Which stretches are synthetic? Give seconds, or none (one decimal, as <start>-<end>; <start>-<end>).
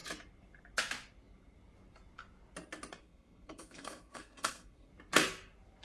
3.0-4.9